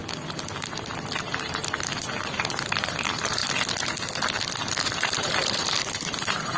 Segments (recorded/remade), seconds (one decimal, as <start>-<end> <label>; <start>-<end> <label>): 0.0-1.2 recorded; 1.2-1.6 remade; 1.6-2.5 recorded; 2.5-3.4 remade; 3.4-4.7 recorded; 4.7-6.6 remade